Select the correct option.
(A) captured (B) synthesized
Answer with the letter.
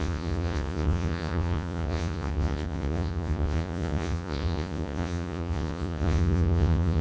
B